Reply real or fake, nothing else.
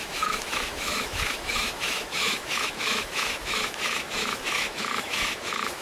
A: fake